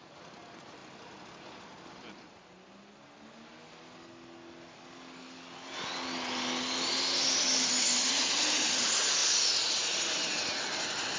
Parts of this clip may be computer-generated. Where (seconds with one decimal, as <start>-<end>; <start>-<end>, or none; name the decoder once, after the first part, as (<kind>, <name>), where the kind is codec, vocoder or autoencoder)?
9.2-10.1 (vocoder, Vocos)